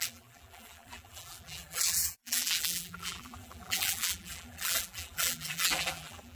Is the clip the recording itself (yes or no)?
no